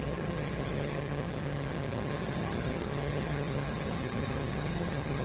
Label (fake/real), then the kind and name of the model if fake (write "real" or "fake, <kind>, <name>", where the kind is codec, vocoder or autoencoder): fake, vocoder, HiFi-GAN